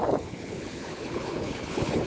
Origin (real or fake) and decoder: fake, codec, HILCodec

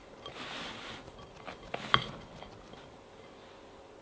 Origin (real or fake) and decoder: real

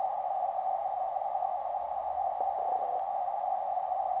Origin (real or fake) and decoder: real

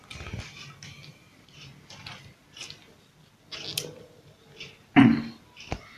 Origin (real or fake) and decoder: real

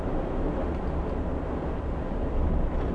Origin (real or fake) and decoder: real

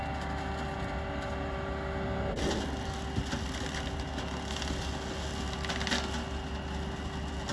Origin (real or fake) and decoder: real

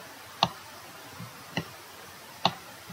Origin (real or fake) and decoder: fake, vocoder, BigVGAN v2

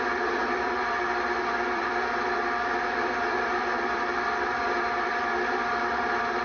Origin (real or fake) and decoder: fake, vocoder, BigVGAN v2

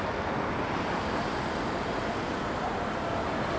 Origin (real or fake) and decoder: real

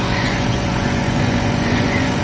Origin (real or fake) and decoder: fake, vocoder, Vocos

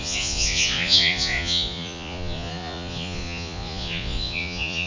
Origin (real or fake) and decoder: fake, vocoder, Vocos